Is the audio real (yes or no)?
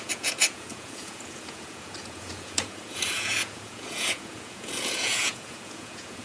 no